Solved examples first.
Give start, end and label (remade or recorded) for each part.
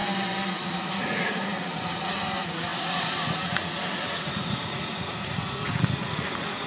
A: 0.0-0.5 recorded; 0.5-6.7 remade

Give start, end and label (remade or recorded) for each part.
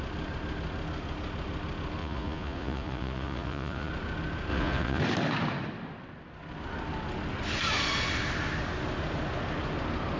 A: 0.0-2.0 recorded; 2.0-3.9 remade; 3.9-4.5 recorded; 4.5-5.0 remade; 5.0-10.2 recorded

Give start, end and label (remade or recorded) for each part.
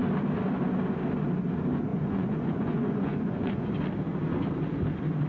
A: 0.0-1.9 recorded; 1.9-3.7 remade; 3.7-5.3 recorded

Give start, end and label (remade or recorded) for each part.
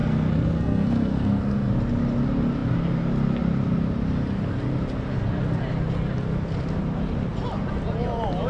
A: 0.0-1.7 remade; 1.7-8.5 recorded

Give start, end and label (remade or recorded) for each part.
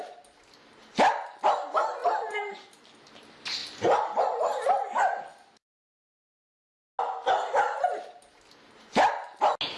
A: 0.0-2.0 recorded; 2.0-2.8 remade; 2.8-9.8 recorded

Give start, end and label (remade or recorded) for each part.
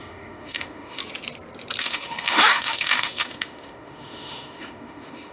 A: 0.0-1.0 remade; 1.0-1.8 recorded; 1.8-5.3 remade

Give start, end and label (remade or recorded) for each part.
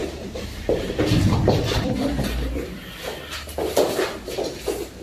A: 0.0-3.0 remade; 3.0-5.0 recorded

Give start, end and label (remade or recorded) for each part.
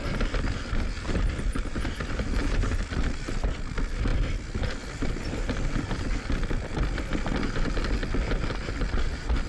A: 0.0-9.5 recorded